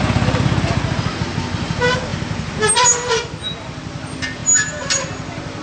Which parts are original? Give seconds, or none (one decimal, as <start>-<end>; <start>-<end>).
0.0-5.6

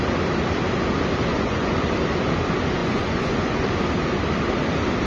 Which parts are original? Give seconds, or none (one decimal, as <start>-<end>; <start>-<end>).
0.0-1.3; 1.9-2.8; 3.7-5.1

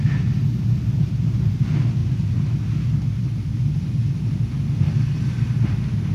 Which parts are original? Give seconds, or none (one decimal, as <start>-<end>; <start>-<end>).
0.0-6.1